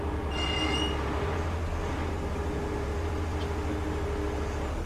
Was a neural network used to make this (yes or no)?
no